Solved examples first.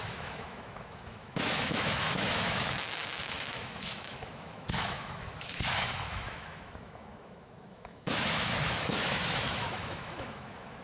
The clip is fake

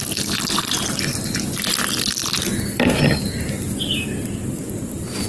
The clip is real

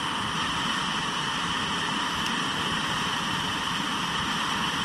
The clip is real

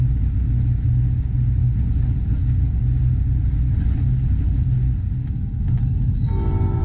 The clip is real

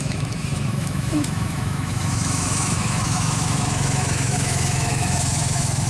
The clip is fake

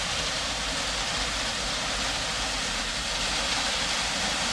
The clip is real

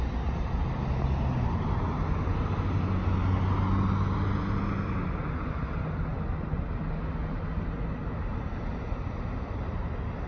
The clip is real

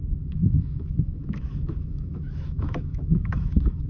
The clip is fake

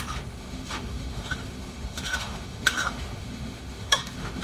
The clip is fake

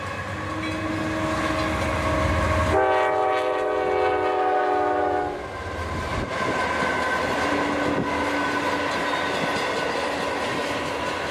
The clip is real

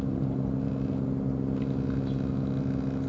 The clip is real